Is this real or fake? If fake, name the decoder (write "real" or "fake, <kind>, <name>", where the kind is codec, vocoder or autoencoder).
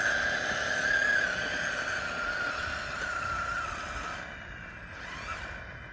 real